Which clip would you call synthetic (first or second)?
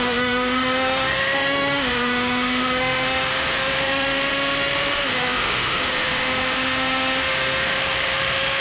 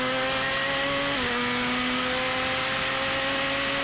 first